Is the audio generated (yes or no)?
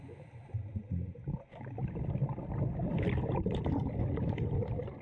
no